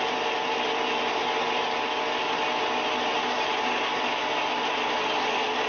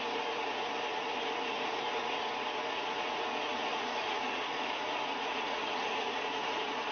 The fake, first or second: second